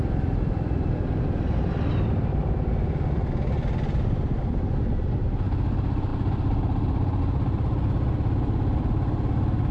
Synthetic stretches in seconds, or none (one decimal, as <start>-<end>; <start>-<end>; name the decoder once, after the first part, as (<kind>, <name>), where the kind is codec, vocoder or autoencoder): none